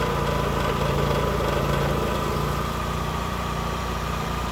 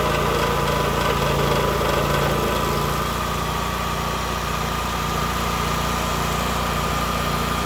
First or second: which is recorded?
second